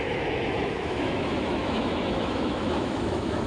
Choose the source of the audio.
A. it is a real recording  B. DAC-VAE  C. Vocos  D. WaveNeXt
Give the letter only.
B